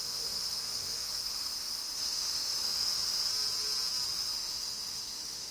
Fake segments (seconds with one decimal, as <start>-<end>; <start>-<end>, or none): 0.0-3.3; 4.1-5.5